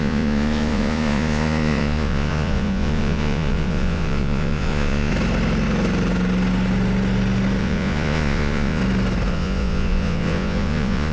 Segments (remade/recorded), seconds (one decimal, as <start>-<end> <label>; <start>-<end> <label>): 0.0-5.1 remade; 5.1-7.6 recorded; 7.6-8.8 remade; 8.8-9.3 recorded; 9.3-11.1 remade